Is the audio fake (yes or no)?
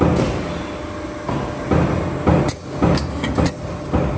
no